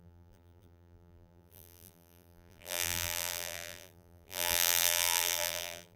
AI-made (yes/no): yes